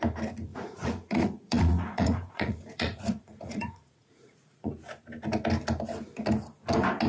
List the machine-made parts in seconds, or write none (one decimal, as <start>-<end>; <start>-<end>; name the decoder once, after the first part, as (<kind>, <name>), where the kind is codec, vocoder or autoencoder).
0.5-4.7 (vocoder, Vocos)